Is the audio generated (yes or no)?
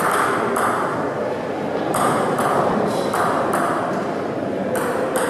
yes